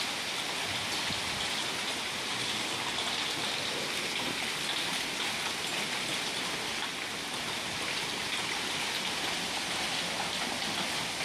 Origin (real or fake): real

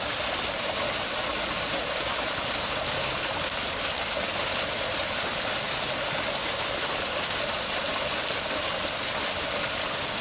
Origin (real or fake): real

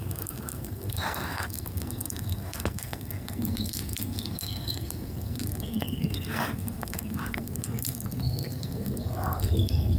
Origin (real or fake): fake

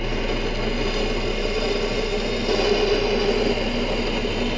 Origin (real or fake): real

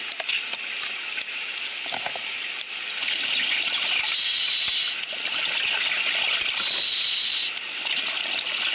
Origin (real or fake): real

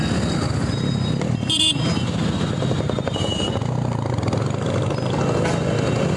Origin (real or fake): real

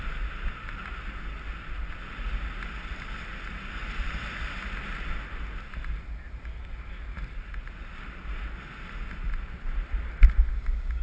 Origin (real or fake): real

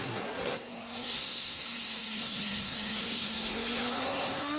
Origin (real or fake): fake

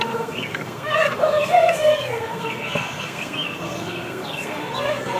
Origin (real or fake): fake